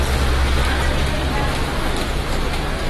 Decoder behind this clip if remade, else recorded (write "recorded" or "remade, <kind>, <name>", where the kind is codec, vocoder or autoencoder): recorded